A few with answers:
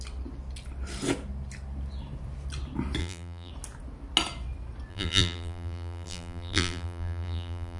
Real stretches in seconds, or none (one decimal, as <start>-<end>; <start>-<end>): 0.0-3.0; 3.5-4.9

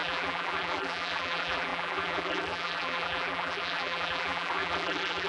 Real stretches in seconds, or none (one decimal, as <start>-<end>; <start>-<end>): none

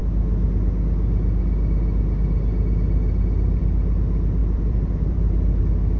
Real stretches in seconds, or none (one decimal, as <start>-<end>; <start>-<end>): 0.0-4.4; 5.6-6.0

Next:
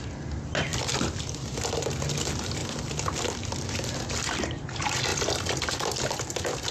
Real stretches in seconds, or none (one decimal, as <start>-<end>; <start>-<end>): 0.0-0.7; 1.7-2.6; 4.0-5.1; 5.7-6.7

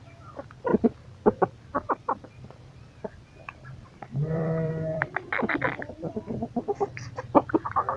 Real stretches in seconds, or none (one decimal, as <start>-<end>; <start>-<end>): 0.7-1.9

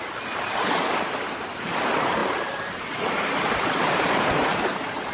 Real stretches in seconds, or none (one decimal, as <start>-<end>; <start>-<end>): 0.0-2.2

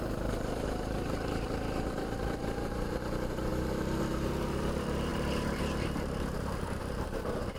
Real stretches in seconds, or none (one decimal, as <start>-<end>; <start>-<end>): none

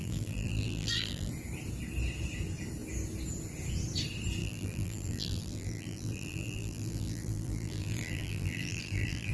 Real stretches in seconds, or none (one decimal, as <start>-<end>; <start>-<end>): 1.3-4.4